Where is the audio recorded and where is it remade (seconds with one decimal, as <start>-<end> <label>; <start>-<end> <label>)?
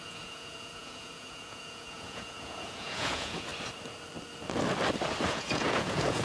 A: 0.0-3.5 remade; 3.5-5.3 recorded; 5.3-6.2 remade